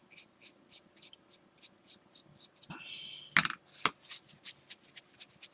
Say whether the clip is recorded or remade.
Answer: recorded